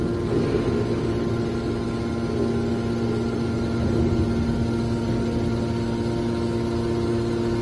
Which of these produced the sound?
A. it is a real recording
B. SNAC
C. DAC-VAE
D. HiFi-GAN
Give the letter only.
A